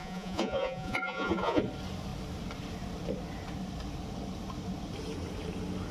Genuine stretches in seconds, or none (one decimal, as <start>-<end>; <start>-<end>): 1.6-5.9